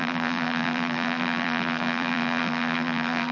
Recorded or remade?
remade